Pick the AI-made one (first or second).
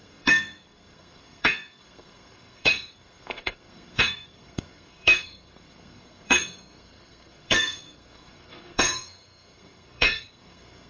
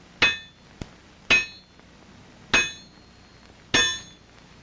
first